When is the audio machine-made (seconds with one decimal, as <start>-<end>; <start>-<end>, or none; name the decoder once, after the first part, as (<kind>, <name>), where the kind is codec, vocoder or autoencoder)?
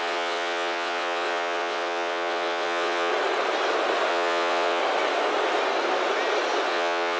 0.0-3.1 (vocoder, WaveNeXt); 4.1-4.8; 6.7-7.2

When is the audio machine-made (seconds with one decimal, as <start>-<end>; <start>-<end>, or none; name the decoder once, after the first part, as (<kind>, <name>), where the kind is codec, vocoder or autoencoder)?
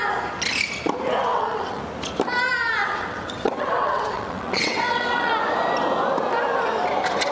1.3-1.8 (vocoder, WaveNeXt); 2.8-5.3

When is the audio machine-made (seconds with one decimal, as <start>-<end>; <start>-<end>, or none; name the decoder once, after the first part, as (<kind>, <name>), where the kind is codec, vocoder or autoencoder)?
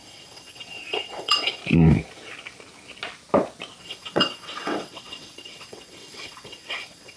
0.0-1.6 (vocoder, WaveNeXt); 3.8-7.2